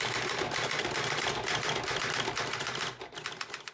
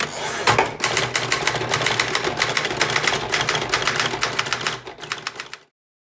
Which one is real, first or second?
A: second